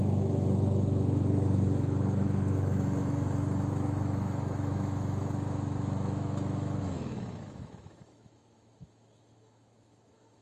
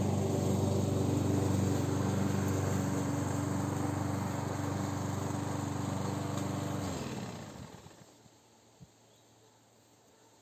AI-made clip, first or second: first